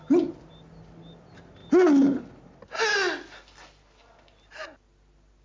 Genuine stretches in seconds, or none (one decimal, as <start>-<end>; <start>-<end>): 0.0-5.4